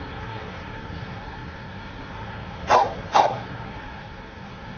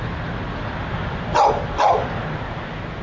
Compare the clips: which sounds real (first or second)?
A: second